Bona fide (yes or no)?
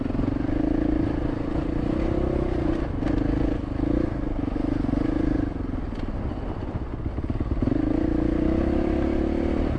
yes